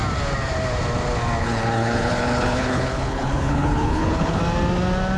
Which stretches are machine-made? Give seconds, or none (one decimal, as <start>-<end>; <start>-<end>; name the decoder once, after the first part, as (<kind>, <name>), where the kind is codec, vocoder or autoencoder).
1.4-4.4 (codec, HILCodec)